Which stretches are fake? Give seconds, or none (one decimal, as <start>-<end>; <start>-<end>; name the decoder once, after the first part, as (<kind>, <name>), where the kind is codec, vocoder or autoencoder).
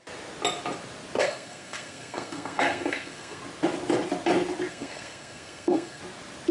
1.2-3.4 (codec, SNAC); 4.7-6.0